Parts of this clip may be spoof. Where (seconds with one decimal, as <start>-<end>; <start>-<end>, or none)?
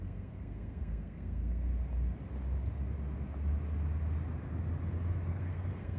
0.0-1.7; 5.3-6.0